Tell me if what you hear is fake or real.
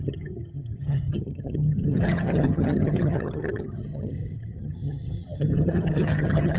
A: fake